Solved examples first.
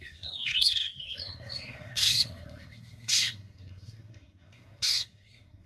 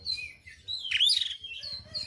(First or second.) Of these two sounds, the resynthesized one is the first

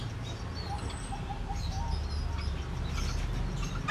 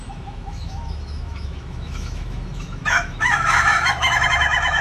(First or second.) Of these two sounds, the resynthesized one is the second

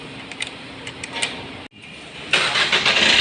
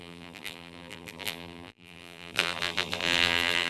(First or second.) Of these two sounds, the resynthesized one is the second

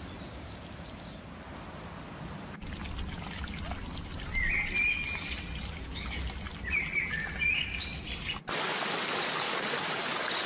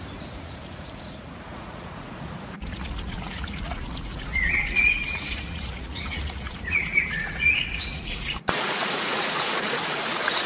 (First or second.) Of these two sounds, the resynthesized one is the second